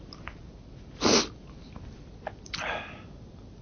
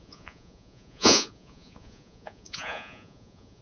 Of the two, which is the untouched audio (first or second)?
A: first